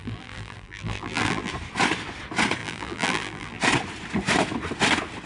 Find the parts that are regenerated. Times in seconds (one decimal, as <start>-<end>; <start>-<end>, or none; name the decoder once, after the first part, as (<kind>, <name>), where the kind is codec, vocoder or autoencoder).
0.0-1.5 (vocoder, BigVGAN v2); 2.6-3.6